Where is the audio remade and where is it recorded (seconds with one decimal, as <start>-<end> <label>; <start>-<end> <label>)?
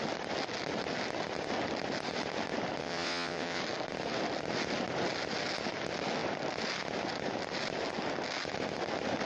0.0-2.8 recorded; 2.8-3.6 remade; 3.6-9.3 recorded